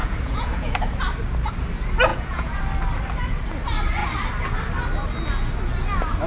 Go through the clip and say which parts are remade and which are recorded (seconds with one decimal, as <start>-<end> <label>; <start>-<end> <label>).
0.0-0.8 remade; 0.8-2.1 recorded; 2.1-2.6 remade; 2.6-6.3 recorded